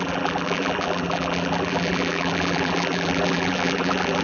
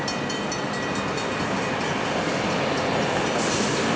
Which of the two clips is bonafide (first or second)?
second